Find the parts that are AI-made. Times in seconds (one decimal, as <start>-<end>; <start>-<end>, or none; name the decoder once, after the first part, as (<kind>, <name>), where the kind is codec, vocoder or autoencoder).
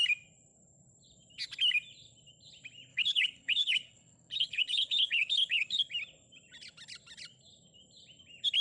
2.9-5.8 (codec, HILCodec)